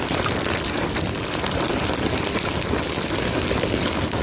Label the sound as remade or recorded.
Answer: recorded